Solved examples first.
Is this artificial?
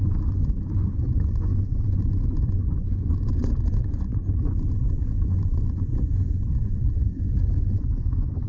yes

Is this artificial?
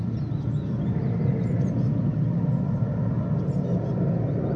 no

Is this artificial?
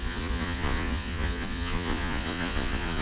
yes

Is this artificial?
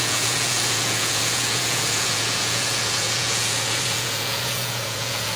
yes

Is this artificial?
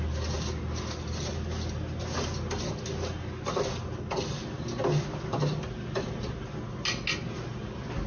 no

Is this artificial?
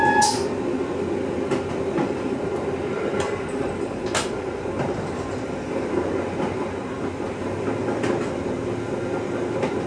no